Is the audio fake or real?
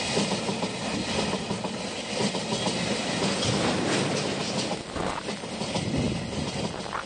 real